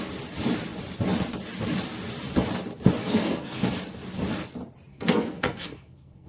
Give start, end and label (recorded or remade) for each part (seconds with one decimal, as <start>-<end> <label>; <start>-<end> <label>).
0.0-3.0 recorded; 3.0-3.7 remade; 3.7-4.9 recorded; 4.9-6.3 remade